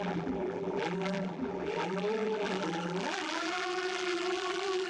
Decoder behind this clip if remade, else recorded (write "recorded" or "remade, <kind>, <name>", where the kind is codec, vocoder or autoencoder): remade, vocoder, BigVGAN v2